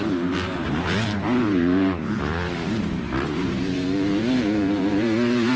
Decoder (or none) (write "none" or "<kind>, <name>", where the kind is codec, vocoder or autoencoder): vocoder, BigVGAN v2